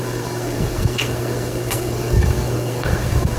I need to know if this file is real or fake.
fake